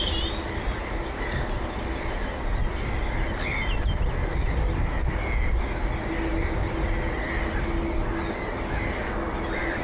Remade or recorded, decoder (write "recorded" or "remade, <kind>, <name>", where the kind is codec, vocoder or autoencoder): recorded